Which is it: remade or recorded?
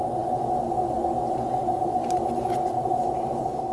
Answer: recorded